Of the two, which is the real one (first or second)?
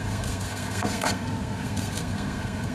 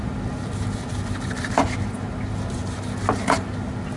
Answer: second